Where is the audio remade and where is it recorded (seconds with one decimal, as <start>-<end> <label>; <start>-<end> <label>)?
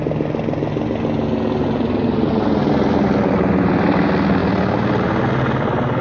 0.0-6.0 recorded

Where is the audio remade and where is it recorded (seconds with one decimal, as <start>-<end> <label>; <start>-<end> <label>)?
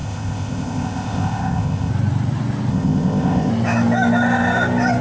0.0-1.9 remade; 1.9-2.7 recorded; 2.7-3.5 remade; 3.5-5.0 recorded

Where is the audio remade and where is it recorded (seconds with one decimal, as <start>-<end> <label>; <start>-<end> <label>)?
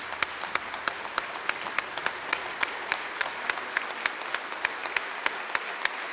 0.0-2.0 recorded; 2.0-3.3 remade; 3.3-6.1 recorded